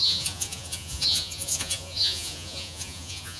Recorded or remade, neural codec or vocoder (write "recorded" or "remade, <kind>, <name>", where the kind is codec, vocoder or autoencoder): remade, vocoder, Vocos